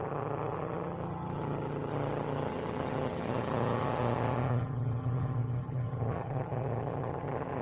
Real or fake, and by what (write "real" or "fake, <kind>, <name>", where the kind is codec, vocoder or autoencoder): fake, vocoder, HiFi-GAN